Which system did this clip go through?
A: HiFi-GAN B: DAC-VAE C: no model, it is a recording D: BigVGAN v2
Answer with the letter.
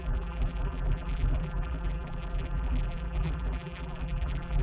D